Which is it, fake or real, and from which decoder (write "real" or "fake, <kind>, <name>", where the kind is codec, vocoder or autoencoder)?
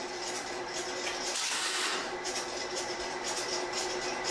real